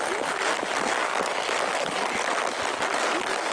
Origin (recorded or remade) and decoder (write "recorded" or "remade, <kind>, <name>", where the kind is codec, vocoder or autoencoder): recorded